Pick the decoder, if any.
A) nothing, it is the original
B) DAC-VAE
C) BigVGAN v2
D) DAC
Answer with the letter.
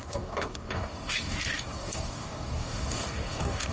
D